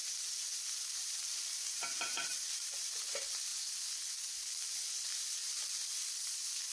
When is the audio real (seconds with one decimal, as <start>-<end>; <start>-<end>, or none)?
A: 0.0-1.0; 2.9-5.4; 6.1-6.7